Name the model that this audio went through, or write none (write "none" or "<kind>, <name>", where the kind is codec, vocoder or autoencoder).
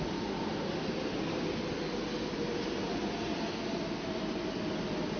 none